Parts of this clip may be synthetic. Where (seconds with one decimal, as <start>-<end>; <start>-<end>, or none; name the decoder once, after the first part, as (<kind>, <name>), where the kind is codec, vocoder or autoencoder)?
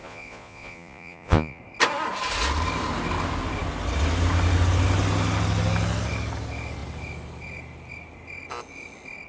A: 0.0-1.6 (vocoder, Vocos)